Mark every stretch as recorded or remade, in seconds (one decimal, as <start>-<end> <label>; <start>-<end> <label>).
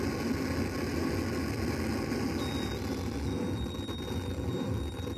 0.0-5.2 recorded